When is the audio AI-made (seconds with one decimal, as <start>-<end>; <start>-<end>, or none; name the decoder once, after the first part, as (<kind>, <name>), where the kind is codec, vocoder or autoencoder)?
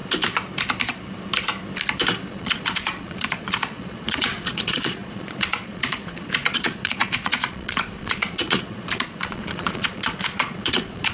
2.3-11.1 (vocoder, Vocos)